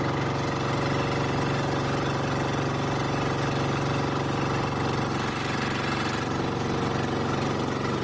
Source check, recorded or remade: recorded